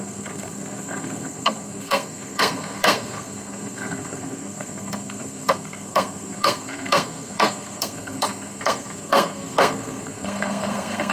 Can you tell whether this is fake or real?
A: fake